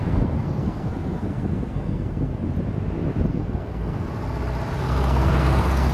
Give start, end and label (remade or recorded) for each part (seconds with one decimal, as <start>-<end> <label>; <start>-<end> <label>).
0.0-2.4 remade; 2.4-3.3 recorded; 3.3-4.1 remade; 4.1-4.8 recorded; 4.8-5.9 remade